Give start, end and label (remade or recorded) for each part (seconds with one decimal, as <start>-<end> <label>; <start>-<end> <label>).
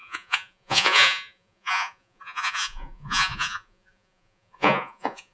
0.0-5.3 remade